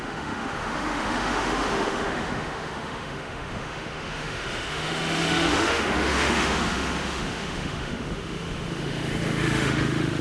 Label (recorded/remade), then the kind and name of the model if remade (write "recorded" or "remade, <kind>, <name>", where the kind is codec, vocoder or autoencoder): remade, autoencoder, DAC-VAE